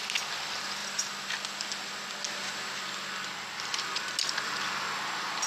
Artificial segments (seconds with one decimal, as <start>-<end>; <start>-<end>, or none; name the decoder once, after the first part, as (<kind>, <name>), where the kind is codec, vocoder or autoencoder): none